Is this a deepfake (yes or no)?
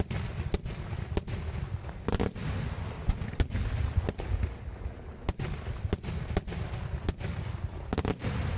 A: no